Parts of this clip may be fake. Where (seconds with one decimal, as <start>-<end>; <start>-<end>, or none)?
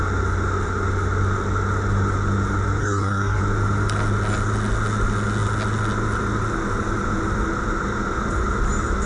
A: 2.8-3.4